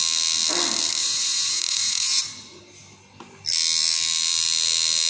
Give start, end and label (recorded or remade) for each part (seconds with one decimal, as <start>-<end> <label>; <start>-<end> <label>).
0.0-1.0 recorded; 1.0-2.6 remade; 2.6-5.1 recorded

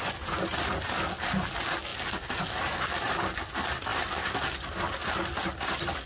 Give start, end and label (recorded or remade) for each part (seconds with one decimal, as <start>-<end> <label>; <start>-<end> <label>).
0.0-6.1 recorded

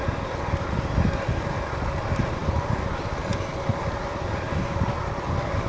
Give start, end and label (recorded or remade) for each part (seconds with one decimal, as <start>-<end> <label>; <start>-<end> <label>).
0.0-5.7 recorded

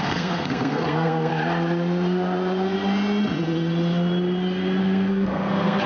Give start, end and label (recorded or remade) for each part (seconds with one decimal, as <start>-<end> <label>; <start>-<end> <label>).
0.0-1.3 remade; 1.3-4.8 recorded; 4.8-5.9 remade

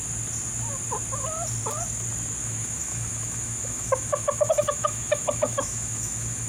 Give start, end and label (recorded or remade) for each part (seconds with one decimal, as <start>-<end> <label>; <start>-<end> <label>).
0.0-2.4 recorded; 2.4-6.5 remade

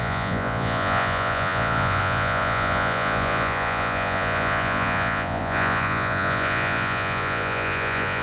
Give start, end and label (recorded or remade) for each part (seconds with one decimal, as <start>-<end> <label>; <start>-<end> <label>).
0.0-8.2 remade

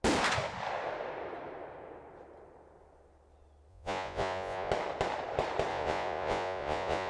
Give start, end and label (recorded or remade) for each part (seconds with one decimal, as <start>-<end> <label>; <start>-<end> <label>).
0.0-3.7 recorded; 3.7-4.7 remade; 4.7-5.7 recorded; 5.7-7.1 remade

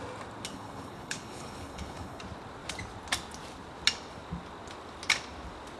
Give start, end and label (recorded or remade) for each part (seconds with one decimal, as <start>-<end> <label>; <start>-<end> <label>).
0.0-0.5 recorded; 0.5-2.2 remade; 2.2-5.8 recorded